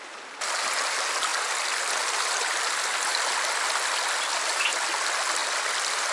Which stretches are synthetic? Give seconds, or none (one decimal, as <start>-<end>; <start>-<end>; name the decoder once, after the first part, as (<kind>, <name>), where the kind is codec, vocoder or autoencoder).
5.4-6.1 (vocoder, BigVGAN v2)